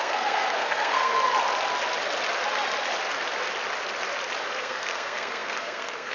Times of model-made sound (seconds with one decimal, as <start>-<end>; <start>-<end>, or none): 0.0-1.1; 4.6-6.1

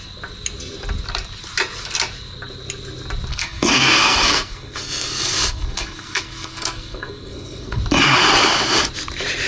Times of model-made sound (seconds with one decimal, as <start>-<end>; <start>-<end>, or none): 3.3-7.8